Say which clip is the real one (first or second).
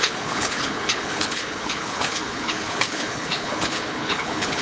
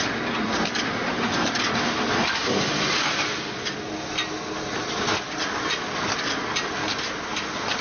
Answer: second